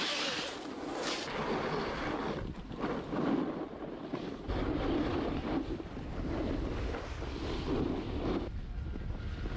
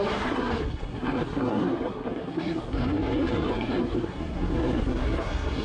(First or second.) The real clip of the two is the first